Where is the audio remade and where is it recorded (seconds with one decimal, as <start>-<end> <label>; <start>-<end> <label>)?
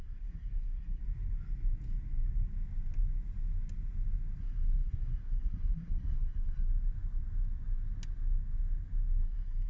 0.0-1.0 remade; 1.0-4.4 recorded; 4.4-6.7 remade; 6.7-9.2 recorded; 9.2-9.7 remade